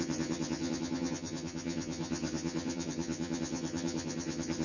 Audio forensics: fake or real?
fake